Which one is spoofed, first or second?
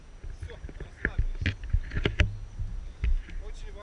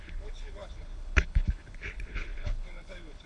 second